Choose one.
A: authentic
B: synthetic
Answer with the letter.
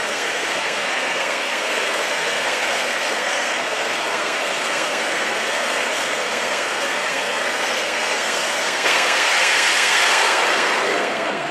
B